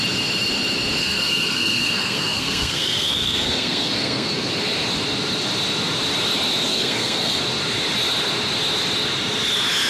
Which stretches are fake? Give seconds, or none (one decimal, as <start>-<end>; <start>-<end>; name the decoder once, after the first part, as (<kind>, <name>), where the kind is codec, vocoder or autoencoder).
1.0-4.5 (codec, SNAC); 6.7-7.4

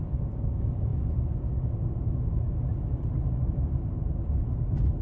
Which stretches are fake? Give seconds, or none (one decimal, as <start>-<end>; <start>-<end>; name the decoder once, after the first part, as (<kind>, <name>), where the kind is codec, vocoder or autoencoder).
none

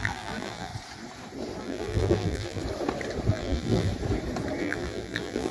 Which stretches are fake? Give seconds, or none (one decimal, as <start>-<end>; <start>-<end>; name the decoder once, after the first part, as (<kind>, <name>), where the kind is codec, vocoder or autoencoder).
0.0-0.7 (vocoder, BigVGAN v2); 1.6-2.6; 3.3-3.9; 4.6-5.5

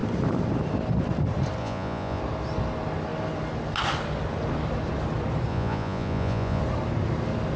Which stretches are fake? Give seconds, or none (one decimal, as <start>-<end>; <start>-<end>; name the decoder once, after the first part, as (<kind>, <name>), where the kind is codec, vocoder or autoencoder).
1.6-2.2 (vocoder, Vocos); 5.5-6.6

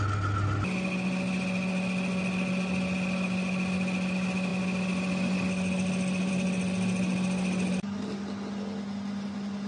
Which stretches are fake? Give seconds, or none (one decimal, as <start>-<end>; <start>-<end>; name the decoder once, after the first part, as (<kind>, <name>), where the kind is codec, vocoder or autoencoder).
none

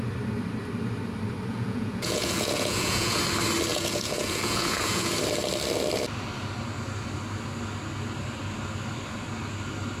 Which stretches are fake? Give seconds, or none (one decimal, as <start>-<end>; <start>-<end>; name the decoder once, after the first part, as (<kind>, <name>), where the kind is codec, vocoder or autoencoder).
1.5-3.2 (vocoder, Vocos); 3.7-5.1

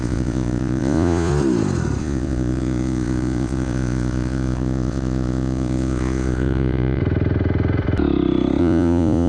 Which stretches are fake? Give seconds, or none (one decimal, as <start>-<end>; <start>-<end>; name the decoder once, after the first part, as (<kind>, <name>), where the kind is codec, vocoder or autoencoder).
0.0-1.3 (vocoder, Vocos); 2.0-7.0; 8.6-9.3

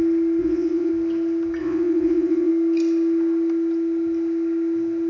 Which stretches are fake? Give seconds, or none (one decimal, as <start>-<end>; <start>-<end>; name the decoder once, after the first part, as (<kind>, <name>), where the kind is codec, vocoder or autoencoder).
0.4-0.9 (vocoder, WaveNeXt); 1.6-2.5